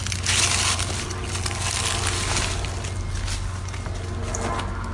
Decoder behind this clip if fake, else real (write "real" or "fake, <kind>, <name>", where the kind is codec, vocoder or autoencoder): real